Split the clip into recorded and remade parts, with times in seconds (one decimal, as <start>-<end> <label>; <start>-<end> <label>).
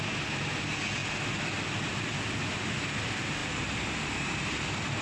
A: 0.0-1.0 recorded; 1.0-3.0 remade; 3.0-3.4 recorded; 3.4-4.0 remade; 4.0-5.0 recorded